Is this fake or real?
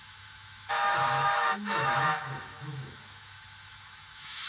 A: fake